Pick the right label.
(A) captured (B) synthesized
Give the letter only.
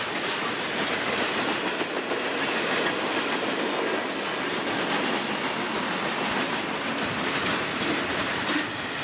A